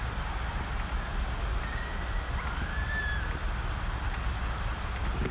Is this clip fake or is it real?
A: real